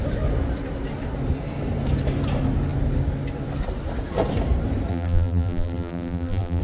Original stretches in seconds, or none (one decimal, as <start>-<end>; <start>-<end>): 0.0-4.9